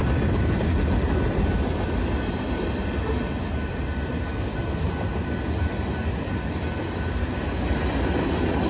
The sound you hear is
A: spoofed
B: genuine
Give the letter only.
B